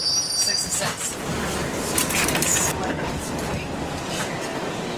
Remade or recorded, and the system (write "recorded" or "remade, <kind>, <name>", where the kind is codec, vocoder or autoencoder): recorded